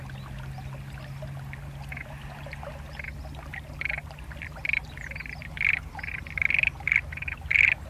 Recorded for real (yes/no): yes